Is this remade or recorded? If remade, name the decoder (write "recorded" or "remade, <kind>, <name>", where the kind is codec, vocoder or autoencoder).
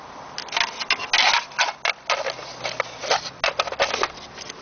recorded